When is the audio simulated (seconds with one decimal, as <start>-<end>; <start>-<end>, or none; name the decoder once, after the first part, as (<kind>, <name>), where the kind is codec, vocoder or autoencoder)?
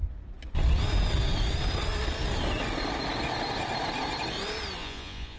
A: 4.8-5.4 (vocoder, Vocos)